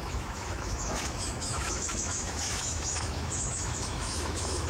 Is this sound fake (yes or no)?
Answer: yes